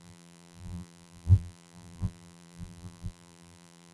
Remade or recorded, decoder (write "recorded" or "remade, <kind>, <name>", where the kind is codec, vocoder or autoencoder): remade, vocoder, BigVGAN v2